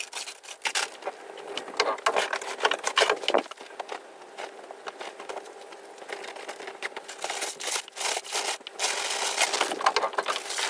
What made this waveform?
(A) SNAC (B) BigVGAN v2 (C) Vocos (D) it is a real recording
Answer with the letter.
D